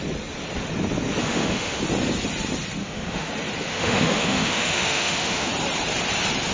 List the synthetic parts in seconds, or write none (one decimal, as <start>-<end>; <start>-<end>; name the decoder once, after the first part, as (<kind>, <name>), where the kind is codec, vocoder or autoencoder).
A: 1.2-1.8 (autoencoder, DAC-VAE); 2.8-3.3; 3.7-5.5